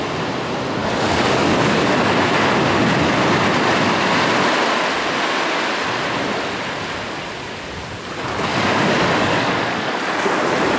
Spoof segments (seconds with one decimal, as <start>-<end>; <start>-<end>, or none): 0.8-2.1; 8.5-10.4